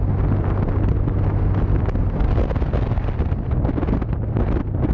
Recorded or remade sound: recorded